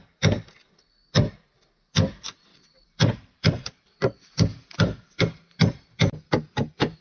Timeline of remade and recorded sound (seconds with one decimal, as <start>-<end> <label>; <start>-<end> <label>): 0.0-2.5 recorded; 2.5-7.0 remade